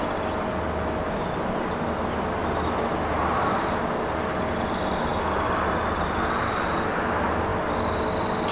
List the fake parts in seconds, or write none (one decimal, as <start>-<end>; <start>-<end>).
none